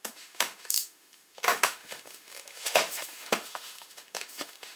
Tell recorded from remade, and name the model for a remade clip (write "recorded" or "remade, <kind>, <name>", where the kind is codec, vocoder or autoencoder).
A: remade, autoencoder, DAC-VAE